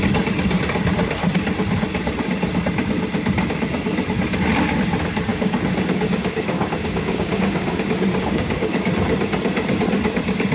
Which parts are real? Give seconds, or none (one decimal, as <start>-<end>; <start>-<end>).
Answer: 0.0-5.3; 7.8-8.2; 8.9-10.5